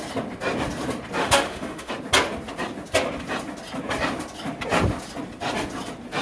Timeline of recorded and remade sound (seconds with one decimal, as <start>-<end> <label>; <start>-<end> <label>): 0.0-1.2 recorded; 1.2-1.9 remade; 1.9-6.2 recorded